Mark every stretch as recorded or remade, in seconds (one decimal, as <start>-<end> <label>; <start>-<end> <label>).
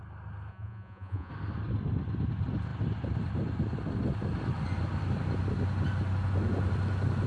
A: 0.0-0.5 recorded; 0.5-1.3 remade; 1.3-7.3 recorded